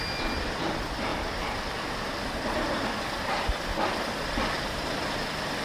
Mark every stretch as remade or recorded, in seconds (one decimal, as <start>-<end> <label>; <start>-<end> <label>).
0.0-5.6 recorded